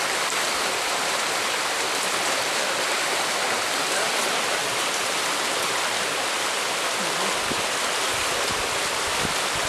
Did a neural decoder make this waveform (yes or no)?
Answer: yes